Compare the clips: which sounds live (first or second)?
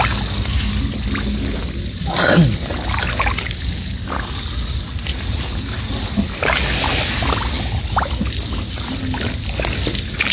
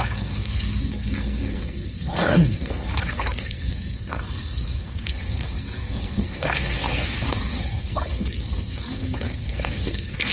first